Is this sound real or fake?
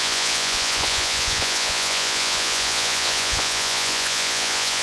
fake